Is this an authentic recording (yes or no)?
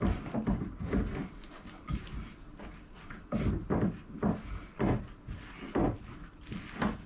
yes